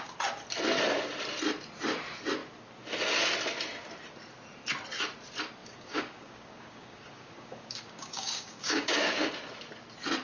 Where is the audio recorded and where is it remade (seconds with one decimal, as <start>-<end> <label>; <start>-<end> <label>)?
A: 0.0-5.6 recorded; 5.6-9.3 remade; 9.3-10.2 recorded